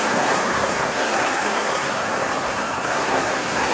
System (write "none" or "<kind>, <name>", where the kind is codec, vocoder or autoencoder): codec, SNAC